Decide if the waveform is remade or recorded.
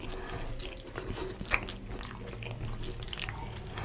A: recorded